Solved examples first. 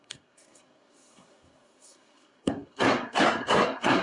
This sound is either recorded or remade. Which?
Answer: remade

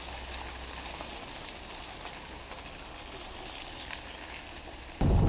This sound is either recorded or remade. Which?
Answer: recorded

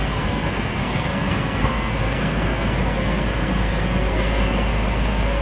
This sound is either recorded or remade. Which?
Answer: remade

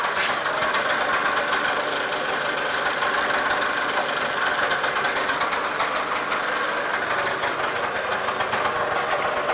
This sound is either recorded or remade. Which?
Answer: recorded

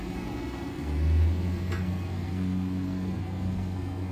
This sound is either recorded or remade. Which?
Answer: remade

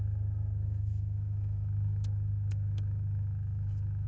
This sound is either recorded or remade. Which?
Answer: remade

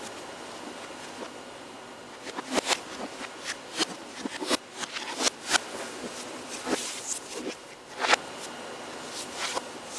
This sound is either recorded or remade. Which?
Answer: recorded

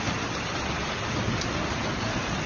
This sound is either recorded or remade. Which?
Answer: recorded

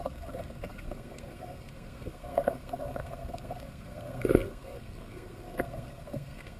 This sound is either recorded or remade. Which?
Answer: remade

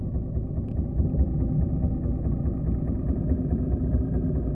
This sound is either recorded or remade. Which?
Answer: recorded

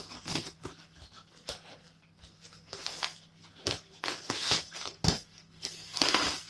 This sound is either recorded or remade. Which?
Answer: remade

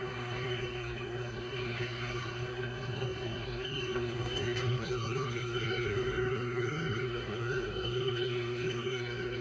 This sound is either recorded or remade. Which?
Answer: remade